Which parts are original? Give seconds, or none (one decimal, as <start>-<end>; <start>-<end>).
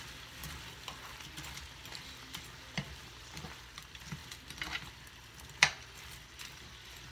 0.4-2.6; 4.2-4.9